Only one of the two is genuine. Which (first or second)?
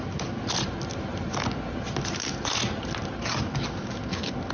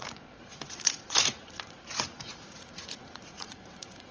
first